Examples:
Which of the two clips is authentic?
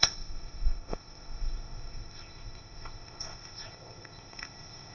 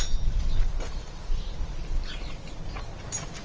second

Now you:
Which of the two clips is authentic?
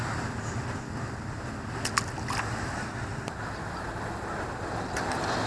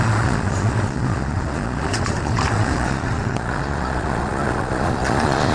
first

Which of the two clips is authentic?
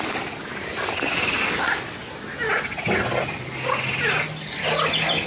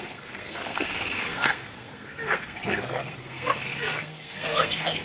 first